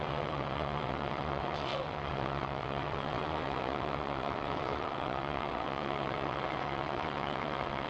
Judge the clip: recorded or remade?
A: remade